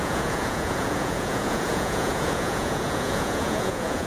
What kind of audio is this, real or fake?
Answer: fake